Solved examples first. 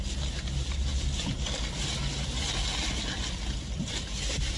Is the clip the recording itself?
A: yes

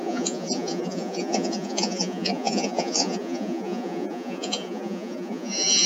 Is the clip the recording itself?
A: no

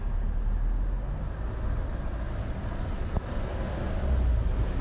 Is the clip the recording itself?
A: yes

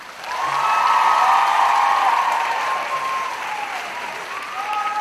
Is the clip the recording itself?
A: no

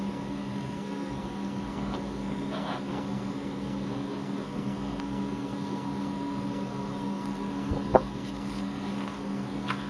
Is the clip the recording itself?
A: no